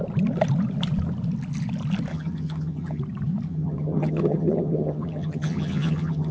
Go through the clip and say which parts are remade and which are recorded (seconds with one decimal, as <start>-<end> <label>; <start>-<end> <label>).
0.0-2.1 recorded; 2.1-3.0 remade; 3.0-3.5 recorded; 3.5-6.3 remade